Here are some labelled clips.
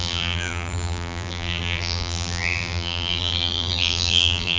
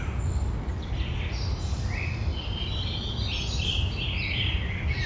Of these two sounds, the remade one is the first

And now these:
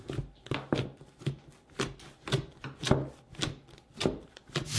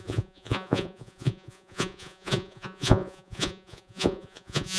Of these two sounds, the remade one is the second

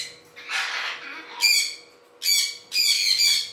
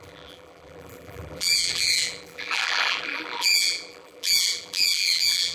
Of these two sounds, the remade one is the second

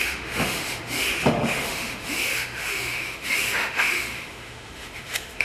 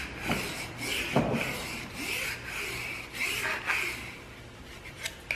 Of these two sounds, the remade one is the first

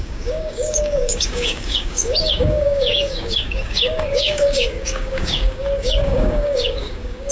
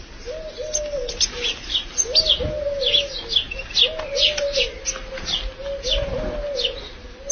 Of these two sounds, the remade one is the first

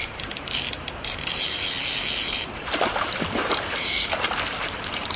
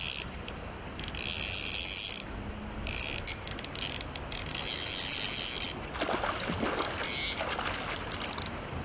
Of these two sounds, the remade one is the first